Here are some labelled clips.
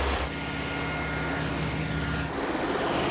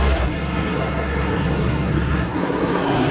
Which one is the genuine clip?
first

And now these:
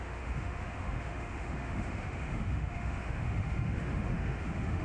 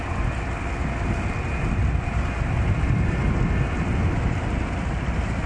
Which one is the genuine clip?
second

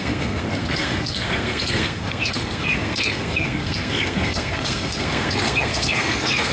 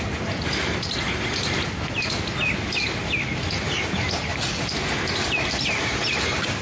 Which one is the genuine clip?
second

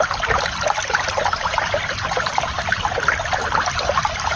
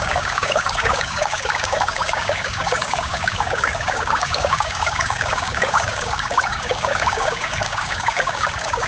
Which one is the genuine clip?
first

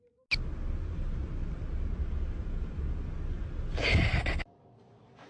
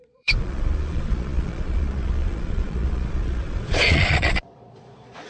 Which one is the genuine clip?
first